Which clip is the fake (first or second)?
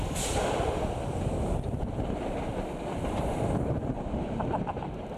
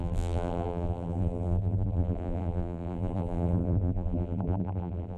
second